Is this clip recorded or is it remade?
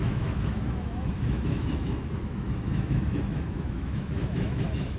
remade